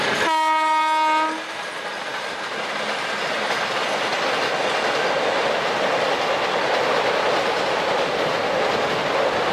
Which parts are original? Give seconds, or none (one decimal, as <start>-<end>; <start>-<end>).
0.0-9.5